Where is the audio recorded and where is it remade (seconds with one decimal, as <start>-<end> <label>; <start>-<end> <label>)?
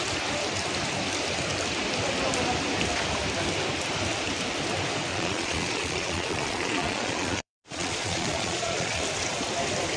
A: 0.0-5.1 recorded; 5.1-9.0 remade; 9.0-10.0 recorded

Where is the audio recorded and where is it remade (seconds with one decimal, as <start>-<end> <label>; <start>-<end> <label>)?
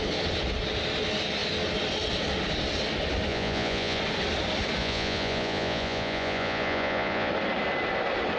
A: 0.0-3.3 recorded; 3.3-4.0 remade; 4.0-4.8 recorded; 4.8-7.3 remade; 7.3-8.4 recorded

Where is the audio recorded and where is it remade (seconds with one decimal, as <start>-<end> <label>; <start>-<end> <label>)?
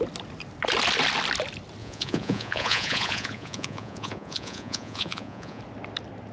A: 0.0-1.8 recorded; 1.8-5.6 remade; 5.6-6.3 recorded